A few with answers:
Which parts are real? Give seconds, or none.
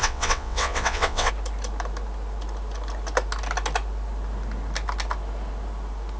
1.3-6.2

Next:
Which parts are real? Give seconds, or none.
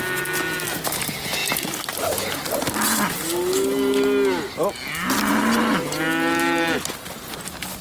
0.0-7.8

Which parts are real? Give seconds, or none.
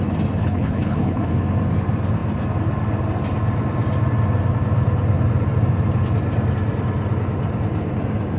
0.0-0.4; 1.3-8.4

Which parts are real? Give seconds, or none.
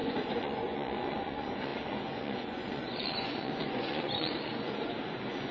none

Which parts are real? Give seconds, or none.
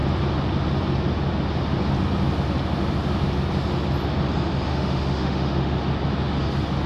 0.0-4.7; 5.8-6.9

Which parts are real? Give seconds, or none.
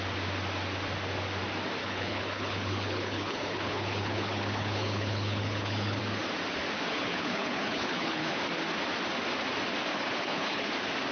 0.0-1.8; 6.0-6.9; 8.4-9.9; 10.7-11.1